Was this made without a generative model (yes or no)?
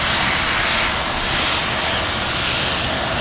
yes